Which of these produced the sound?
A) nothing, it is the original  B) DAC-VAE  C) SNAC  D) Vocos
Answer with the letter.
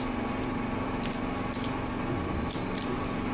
A